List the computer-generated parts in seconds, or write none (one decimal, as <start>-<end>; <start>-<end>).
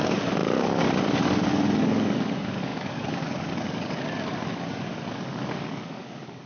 0.0-6.5